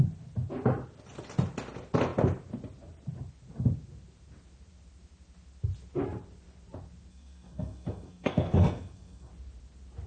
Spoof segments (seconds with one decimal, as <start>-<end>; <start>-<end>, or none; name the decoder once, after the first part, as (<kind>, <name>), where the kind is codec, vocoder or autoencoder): 7.1-9.3 (codec, SNAC)